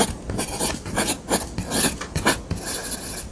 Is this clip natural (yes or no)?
yes